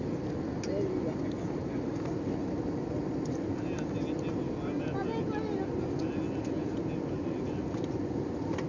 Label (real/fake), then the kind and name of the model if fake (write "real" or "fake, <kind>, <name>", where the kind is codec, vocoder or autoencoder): real